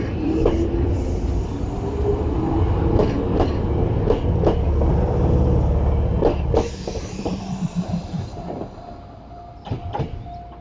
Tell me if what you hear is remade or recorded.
recorded